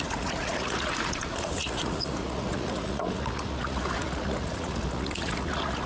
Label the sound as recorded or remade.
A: remade